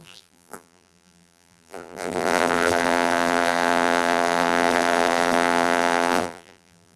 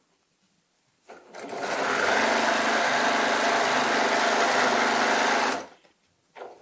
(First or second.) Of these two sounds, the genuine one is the second